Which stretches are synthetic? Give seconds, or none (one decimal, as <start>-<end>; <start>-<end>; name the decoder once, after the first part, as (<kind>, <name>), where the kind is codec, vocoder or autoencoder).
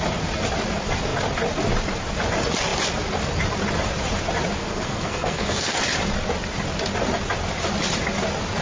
4.6-5.8 (codec, SNAC)